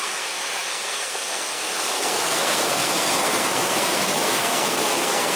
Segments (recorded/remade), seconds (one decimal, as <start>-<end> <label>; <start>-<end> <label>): 0.0-5.4 remade